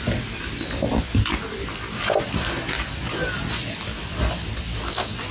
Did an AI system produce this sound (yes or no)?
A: no